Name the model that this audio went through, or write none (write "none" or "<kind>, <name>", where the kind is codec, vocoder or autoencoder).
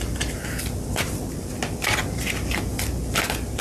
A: none